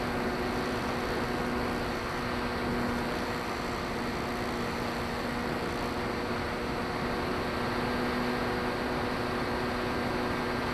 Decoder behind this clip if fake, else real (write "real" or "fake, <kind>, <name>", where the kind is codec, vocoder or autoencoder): real